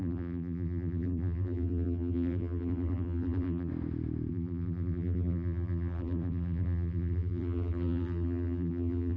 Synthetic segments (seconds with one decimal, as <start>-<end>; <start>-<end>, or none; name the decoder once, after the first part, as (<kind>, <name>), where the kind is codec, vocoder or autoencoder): 0.0-3.7 (vocoder, BigVGAN v2); 4.3-9.2